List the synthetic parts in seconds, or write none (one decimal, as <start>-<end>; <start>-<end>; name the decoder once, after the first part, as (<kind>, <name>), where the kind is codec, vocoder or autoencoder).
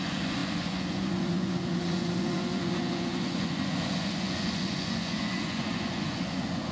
0.0-6.7 (vocoder, Vocos)